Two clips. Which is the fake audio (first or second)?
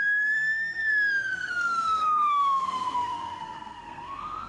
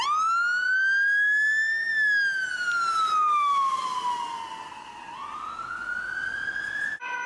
first